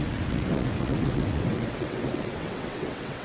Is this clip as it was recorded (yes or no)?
no